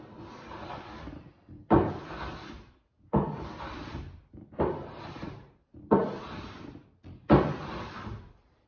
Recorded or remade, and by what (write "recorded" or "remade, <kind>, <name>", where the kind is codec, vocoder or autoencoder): recorded